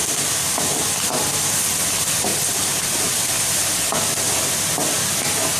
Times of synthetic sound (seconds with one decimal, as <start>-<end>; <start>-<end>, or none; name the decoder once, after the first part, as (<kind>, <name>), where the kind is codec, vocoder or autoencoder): none